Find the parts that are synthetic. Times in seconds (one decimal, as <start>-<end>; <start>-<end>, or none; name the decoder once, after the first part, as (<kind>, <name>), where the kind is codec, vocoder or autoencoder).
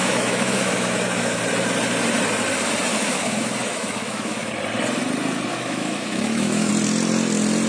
0.0-1.4 (autoencoder, DAC-VAE); 2.9-4.5; 5.5-6.7